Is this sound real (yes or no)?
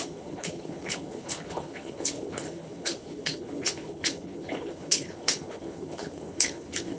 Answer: no